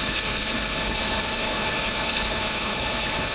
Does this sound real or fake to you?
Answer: fake